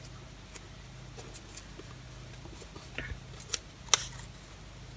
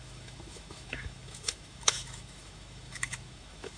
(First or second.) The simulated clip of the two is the second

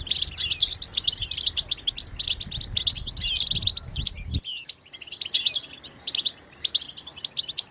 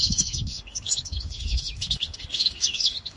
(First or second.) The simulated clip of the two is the second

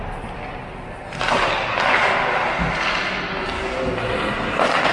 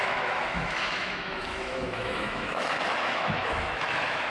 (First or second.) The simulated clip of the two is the second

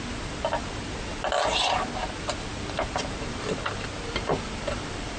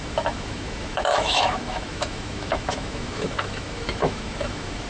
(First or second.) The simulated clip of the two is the second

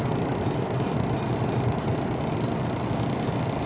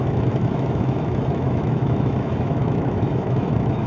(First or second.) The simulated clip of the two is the second